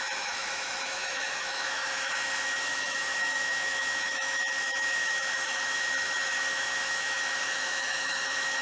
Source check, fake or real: fake